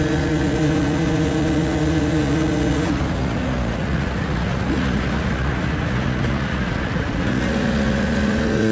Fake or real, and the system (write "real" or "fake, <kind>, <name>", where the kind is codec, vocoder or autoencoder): fake, vocoder, Vocos